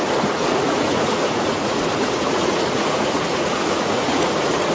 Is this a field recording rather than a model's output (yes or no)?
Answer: no